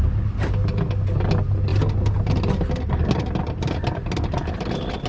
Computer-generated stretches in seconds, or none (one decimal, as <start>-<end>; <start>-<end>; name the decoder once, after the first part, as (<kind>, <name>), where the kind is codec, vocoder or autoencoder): none